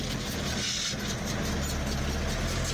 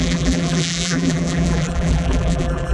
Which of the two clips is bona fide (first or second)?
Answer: first